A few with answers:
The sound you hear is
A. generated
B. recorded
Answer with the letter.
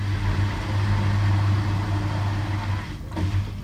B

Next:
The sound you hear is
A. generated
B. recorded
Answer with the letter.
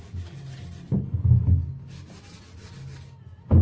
B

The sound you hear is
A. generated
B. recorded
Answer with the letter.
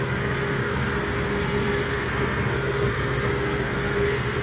A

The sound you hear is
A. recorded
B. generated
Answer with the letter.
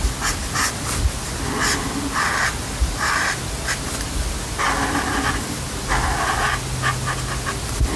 A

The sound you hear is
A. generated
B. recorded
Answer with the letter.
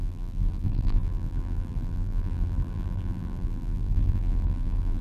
A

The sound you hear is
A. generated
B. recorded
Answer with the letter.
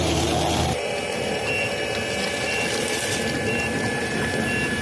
B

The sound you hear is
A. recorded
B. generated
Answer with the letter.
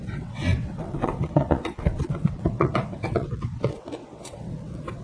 B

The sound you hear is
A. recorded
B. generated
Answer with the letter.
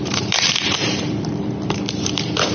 B